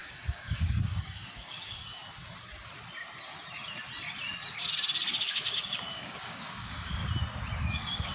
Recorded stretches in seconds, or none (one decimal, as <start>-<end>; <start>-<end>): 2.0-5.2; 7.0-7.6